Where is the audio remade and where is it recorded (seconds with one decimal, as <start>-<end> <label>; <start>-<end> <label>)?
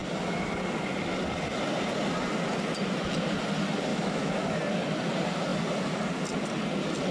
0.0-3.9 recorded; 3.9-4.6 remade; 4.6-7.1 recorded